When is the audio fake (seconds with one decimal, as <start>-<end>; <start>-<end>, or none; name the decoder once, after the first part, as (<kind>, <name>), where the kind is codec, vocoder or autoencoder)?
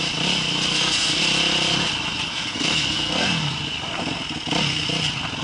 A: 0.7-1.2 (codec, SNAC); 2.3-3.3